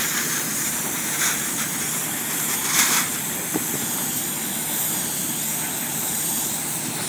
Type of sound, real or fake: fake